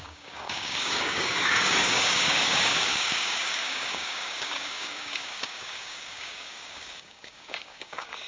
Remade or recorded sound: remade